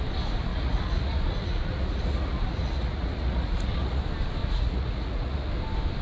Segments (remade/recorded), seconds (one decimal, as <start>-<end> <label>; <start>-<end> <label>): 0.0-0.5 recorded; 0.5-4.0 remade; 4.0-4.4 recorded; 4.4-5.5 remade; 5.5-6.0 recorded